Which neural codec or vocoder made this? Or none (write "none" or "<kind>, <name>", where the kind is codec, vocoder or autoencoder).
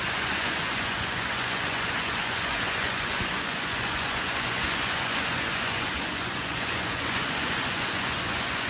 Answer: vocoder, Vocos